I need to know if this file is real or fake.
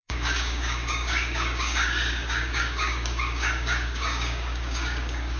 fake